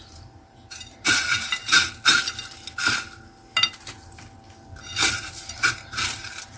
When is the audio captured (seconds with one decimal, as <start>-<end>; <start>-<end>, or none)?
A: 1.6-5.1